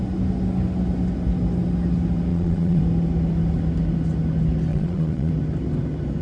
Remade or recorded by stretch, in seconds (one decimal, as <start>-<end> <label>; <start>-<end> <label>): 0.0-2.3 recorded; 2.3-2.8 remade; 2.8-4.7 recorded; 4.7-5.3 remade; 5.3-6.2 recorded